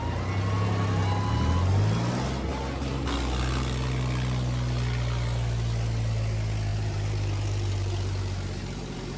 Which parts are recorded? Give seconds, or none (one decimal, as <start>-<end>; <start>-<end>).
0.0-6.7

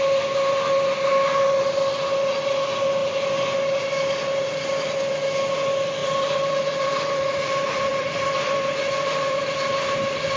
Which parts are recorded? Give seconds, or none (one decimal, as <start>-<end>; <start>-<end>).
0.0-6.0; 9.4-10.4